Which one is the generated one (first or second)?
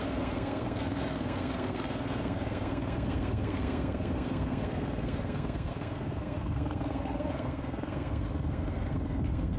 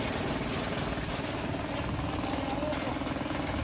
first